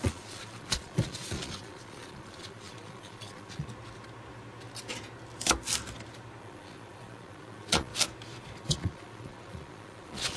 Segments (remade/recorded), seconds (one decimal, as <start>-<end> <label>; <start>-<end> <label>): 0.0-3.7 remade; 3.7-6.4 recorded; 6.4-7.9 remade; 7.9-8.6 recorded; 8.6-10.4 remade